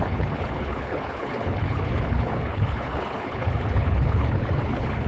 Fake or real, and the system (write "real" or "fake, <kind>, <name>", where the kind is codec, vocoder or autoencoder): fake, codec, HILCodec